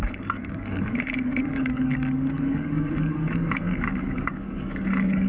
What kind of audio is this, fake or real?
fake